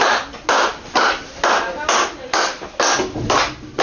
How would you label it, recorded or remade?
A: recorded